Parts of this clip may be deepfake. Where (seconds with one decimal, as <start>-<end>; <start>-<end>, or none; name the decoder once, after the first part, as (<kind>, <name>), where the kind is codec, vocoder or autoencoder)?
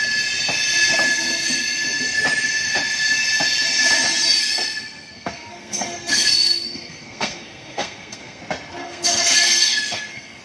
4.4-8.4 (codec, SNAC); 8.8-10.4